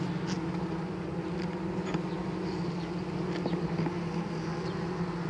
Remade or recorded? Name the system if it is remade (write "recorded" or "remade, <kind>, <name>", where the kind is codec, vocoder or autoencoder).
recorded